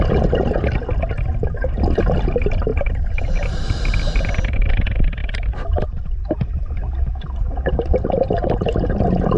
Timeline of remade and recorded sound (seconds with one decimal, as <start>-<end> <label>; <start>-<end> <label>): 0.0-2.7 recorded; 2.7-4.7 remade; 4.7-9.4 recorded